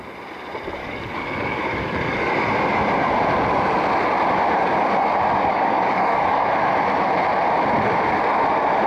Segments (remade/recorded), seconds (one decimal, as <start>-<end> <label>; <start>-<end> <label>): 0.0-0.8 recorded; 0.8-2.3 remade; 2.3-5.5 recorded; 5.5-6.5 remade; 6.5-8.9 recorded